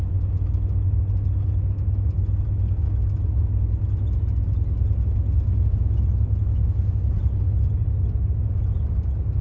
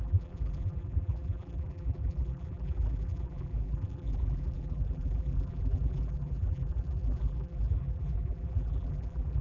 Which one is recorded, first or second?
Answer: first